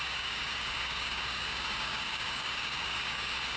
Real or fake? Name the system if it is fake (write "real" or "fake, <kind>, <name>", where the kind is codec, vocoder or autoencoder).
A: fake, codec, DAC